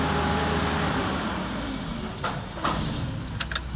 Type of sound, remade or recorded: recorded